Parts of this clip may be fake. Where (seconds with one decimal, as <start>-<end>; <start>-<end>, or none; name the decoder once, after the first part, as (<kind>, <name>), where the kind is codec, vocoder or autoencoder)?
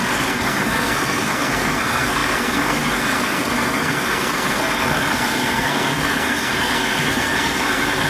0.0-8.1 (codec, SNAC)